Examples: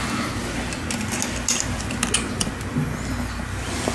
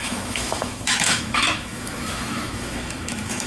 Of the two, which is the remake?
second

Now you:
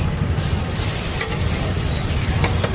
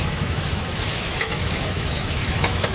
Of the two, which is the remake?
second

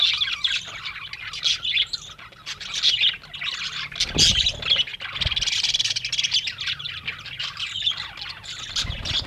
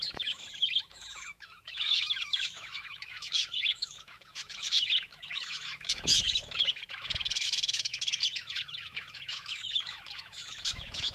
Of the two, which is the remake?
second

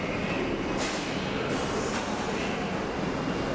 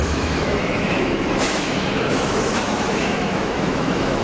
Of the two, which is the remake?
second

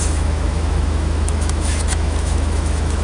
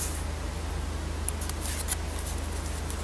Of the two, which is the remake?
first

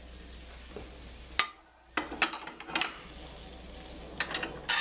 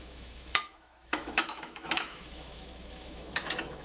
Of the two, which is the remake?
second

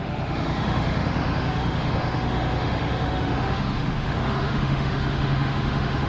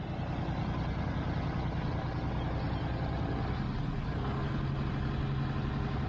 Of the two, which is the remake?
first